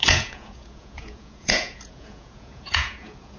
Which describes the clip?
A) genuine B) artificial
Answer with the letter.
B